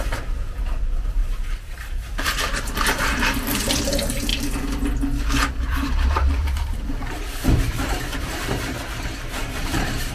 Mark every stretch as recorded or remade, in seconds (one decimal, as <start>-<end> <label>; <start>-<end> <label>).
0.0-4.3 remade; 4.3-5.5 recorded; 5.5-10.1 remade